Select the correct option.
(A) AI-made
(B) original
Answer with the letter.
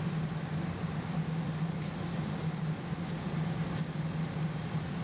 B